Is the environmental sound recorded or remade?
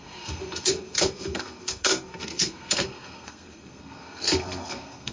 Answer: remade